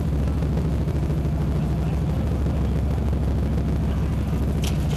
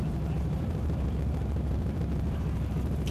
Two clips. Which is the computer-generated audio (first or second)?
second